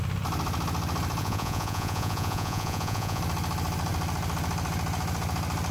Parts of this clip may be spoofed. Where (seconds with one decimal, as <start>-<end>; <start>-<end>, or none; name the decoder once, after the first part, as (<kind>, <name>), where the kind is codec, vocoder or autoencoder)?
1.2-3.2 (vocoder, Vocos)